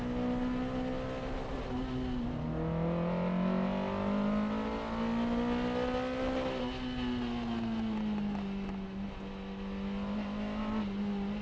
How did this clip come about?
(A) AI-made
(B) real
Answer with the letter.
B